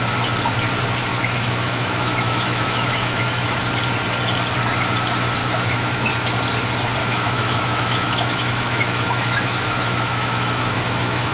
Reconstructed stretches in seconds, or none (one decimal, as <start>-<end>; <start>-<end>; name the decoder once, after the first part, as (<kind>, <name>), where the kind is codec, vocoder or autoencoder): 1.1-3.6 (autoencoder, DAC-VAE); 5.4-6.1; 7.0-11.3